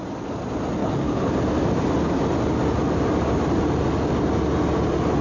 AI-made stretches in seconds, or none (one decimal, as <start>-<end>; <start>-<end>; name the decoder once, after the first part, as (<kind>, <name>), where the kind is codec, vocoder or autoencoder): 0.8-1.3 (codec, HILCodec)